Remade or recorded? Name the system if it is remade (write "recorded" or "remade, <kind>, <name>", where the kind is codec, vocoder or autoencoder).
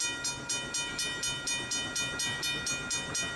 recorded